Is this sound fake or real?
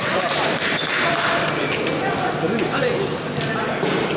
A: fake